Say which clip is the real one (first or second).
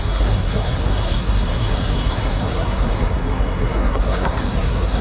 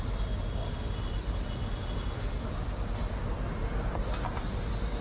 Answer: second